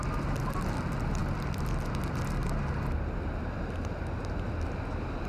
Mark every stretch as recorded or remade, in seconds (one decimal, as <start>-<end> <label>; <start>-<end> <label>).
0.0-1.2 recorded; 1.2-1.7 remade; 1.7-2.4 recorded; 2.4-3.1 remade; 3.1-5.3 recorded